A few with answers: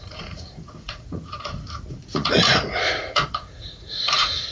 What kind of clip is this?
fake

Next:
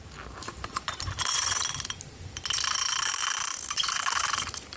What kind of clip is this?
real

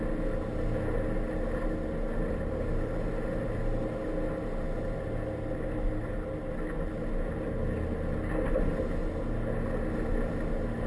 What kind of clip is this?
real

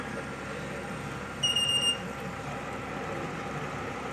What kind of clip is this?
real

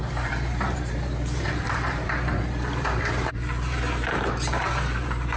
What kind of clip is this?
fake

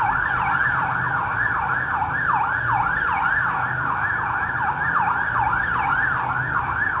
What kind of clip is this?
real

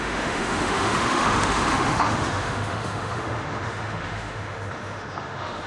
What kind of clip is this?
fake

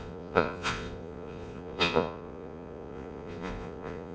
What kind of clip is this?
fake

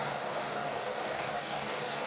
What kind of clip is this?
fake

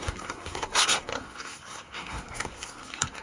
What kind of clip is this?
fake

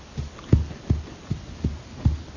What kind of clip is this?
real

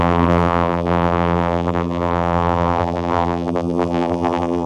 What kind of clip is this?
fake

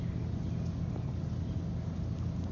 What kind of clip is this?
real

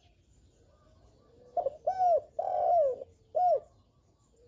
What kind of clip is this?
real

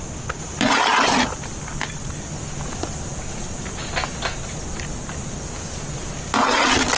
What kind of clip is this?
real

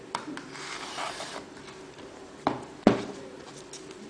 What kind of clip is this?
fake